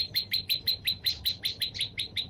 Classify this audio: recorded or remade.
recorded